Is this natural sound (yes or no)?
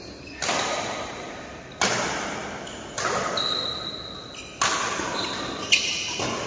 yes